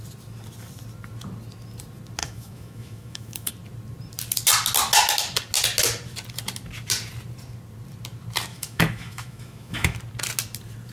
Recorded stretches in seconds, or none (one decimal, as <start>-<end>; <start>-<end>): 0.0-2.2; 3.5-8.5; 10.0-10.9

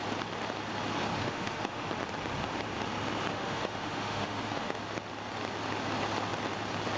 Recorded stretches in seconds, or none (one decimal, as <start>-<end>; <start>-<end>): 0.0-1.1; 1.9-3.3; 4.8-7.0

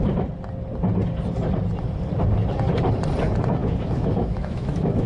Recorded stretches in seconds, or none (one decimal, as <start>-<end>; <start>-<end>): 0.0-3.6

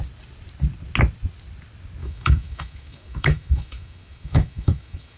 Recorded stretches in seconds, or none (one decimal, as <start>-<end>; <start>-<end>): 0.0-2.0

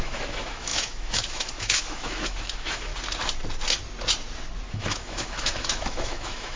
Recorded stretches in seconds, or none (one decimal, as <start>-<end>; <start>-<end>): 2.9-4.7

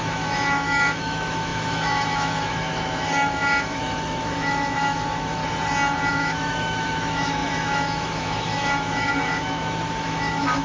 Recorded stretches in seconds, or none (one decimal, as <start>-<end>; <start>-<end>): 5.4-6.1

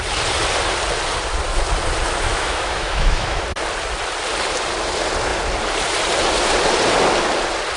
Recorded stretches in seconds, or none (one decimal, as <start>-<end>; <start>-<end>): 0.0-2.3; 3.4-7.8

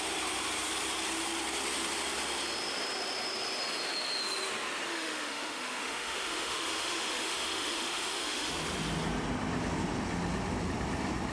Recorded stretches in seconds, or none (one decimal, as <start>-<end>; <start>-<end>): 0.0-4.9; 8.5-11.3